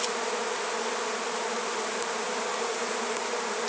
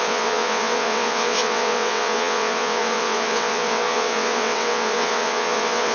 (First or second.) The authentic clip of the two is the first